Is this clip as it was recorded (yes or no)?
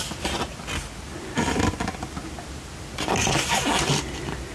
yes